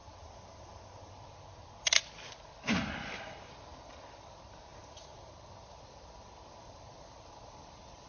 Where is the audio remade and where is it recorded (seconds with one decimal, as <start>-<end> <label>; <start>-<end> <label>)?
0.0-8.1 recorded